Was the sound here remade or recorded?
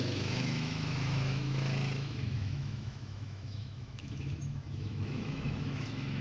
remade